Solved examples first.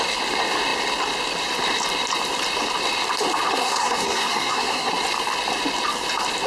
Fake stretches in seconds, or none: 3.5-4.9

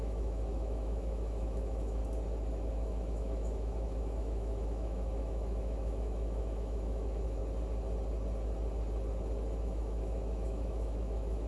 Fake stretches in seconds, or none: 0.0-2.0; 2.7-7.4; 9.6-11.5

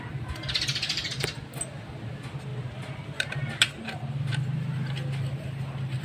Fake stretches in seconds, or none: none